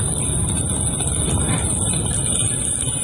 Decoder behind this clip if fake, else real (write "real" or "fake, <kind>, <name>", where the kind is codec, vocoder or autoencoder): real